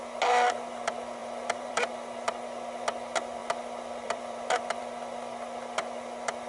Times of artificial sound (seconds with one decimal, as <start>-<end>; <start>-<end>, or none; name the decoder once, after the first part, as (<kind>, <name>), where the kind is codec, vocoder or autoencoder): 1.2-1.9 (vocoder, BigVGAN v2); 3.4-4.8